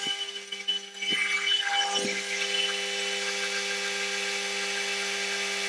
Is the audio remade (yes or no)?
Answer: no